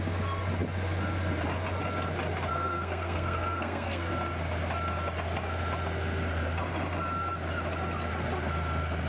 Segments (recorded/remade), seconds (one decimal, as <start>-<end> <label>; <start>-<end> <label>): 0.0-2.5 recorded; 2.5-4.1 remade; 4.1-9.1 recorded